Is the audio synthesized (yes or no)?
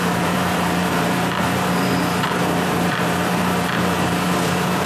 yes